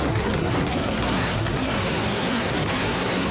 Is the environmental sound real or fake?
fake